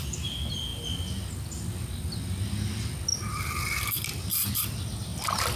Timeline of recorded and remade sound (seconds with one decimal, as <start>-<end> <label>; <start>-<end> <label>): 0.0-5.6 recorded